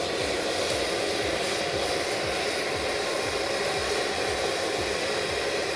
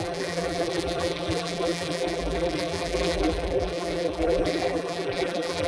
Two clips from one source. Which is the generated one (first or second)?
second